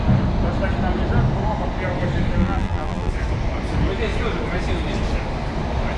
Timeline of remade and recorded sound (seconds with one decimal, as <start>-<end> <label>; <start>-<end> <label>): 0.0-2.4 recorded; 2.4-3.1 remade; 3.1-6.0 recorded